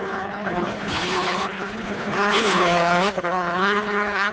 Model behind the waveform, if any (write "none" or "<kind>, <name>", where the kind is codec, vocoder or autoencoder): codec, HILCodec